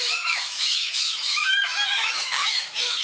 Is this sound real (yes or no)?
no